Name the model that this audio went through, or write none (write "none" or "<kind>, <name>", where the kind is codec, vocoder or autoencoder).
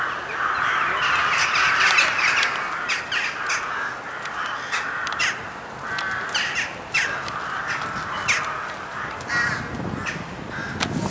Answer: none